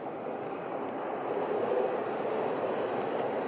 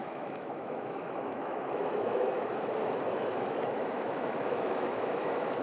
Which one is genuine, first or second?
first